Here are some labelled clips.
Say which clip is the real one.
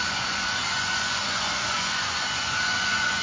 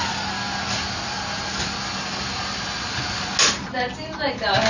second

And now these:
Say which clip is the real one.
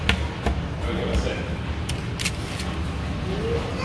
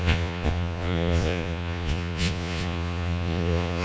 first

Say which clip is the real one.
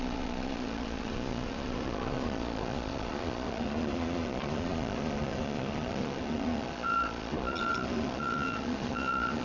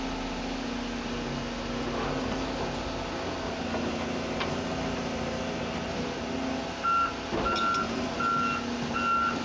second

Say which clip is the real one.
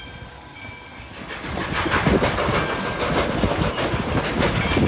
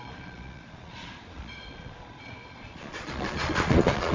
first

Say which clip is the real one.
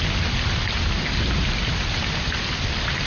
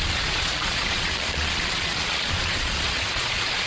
first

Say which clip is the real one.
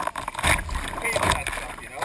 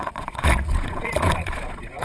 first